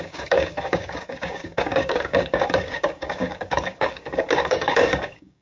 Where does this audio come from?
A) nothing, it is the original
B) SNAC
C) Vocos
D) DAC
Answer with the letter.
D